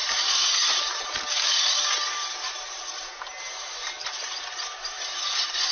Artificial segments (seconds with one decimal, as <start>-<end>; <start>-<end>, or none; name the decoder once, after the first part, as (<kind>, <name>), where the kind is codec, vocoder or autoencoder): 0.0-1.2 (vocoder, BigVGAN v2)